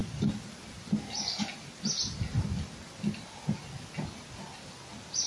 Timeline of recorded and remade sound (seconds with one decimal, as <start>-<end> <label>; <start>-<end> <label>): 0.0-5.3 recorded